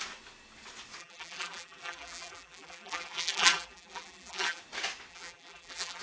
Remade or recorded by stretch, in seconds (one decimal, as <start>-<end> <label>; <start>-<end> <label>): 0.0-1.0 recorded; 1.0-4.6 remade; 4.6-5.1 recorded; 5.1-6.0 remade